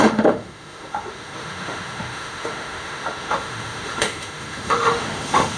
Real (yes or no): no